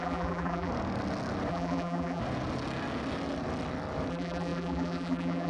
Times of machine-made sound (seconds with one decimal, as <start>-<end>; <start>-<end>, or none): 0.0-0.7; 1.5-2.2; 4.1-5.5